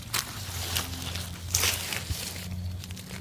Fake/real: real